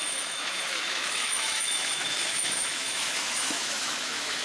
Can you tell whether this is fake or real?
fake